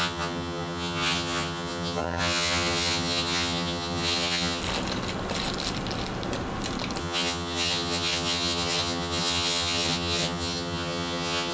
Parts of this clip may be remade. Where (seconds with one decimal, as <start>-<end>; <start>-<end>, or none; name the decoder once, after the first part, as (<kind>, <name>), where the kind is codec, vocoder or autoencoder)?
0.0-4.6 (vocoder, HiFi-GAN); 7.0-11.5

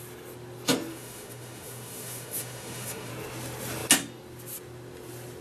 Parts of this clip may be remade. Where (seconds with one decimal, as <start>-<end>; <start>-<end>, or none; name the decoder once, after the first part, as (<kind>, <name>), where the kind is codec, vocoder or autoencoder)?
0.9-3.1 (autoencoder, DAC-VAE)

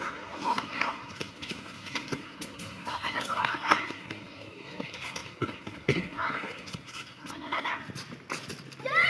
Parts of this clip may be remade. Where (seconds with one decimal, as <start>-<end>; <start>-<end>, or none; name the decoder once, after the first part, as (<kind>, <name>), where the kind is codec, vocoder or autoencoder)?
0.0-7.8 (codec, SNAC)

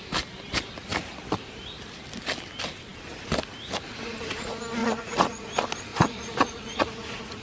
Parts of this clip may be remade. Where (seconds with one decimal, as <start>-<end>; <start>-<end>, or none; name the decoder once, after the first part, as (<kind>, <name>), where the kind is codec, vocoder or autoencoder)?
4.8-5.5 (vocoder, Vocos); 5.9-7.4

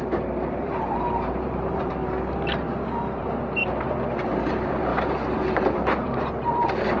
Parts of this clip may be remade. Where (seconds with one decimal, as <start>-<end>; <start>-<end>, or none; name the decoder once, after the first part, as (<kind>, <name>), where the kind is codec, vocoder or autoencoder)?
0.0-2.0 (vocoder, BigVGAN v2); 3.2-3.6; 4.5-7.0

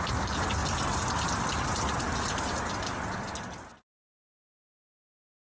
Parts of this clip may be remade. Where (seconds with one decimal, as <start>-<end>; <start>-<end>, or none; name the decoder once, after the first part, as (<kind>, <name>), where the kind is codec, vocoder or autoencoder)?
none

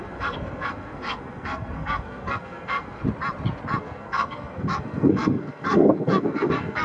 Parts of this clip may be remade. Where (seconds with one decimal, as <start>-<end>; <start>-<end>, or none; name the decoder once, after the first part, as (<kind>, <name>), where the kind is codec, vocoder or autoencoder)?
0.0-3.0 (codec, SNAC); 3.8-6.8